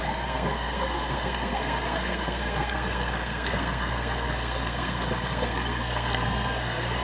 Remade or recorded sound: remade